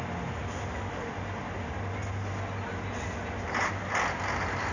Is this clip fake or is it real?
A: real